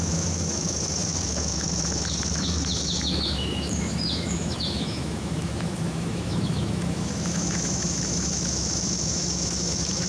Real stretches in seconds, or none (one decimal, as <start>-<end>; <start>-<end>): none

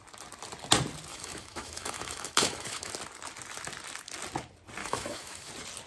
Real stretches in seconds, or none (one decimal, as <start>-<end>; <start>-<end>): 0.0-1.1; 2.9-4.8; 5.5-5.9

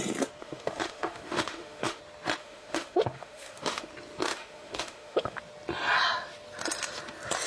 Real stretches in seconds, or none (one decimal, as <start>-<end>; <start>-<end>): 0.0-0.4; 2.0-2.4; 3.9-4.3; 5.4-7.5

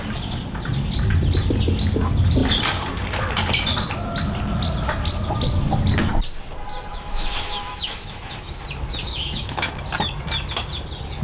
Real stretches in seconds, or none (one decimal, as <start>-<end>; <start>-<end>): 0.0-6.9; 8.6-9.0; 9.7-11.2